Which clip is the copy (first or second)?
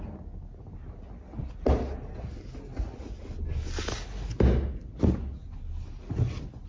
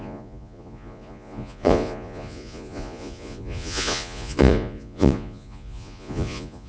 second